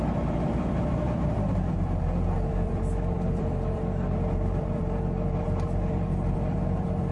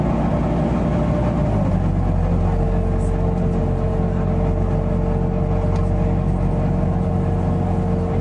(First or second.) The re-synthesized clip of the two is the first